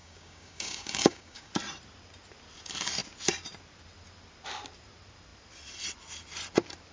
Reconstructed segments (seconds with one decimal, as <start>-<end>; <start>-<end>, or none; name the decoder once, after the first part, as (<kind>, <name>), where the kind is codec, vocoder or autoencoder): 0.0-1.5 (codec, DAC)